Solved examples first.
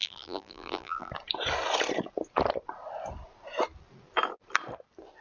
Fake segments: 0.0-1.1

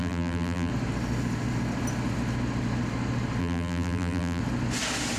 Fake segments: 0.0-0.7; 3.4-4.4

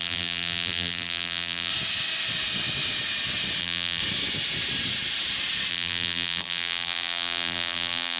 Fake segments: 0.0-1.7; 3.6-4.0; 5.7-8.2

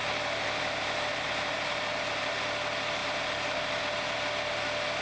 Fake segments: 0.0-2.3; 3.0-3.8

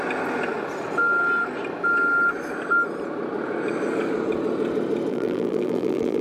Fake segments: 5.1-6.2